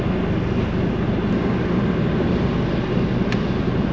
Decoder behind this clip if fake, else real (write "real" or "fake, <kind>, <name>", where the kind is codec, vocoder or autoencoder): real